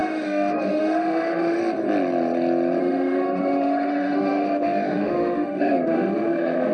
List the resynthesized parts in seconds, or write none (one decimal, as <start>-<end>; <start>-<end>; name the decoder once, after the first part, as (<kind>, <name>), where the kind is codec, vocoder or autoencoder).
0.0-1.6 (autoencoder, DAC-VAE); 2.8-6.7